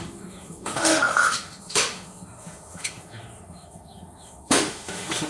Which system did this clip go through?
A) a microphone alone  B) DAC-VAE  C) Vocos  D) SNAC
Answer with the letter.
B